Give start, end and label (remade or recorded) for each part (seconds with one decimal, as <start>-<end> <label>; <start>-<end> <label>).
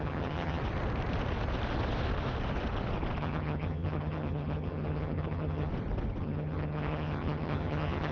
0.0-0.6 remade; 0.6-3.2 recorded; 3.2-5.7 remade; 5.7-6.2 recorded; 6.2-8.1 remade